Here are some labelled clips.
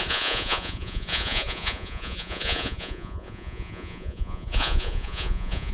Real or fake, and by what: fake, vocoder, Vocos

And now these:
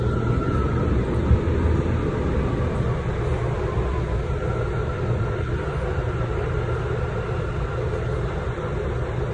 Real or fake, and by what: real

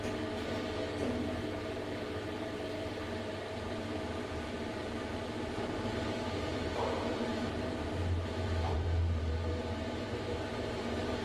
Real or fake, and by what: fake, vocoder, BigVGAN v2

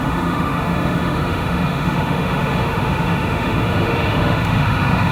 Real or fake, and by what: fake, autoencoder, DAC-VAE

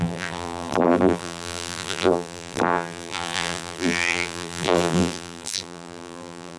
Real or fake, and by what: fake, vocoder, BigVGAN v2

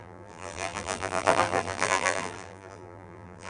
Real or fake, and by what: fake, vocoder, BigVGAN v2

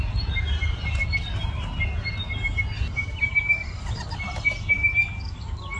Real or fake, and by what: real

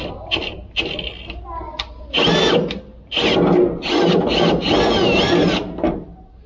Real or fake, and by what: real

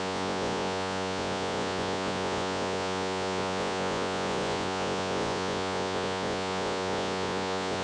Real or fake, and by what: fake, vocoder, Vocos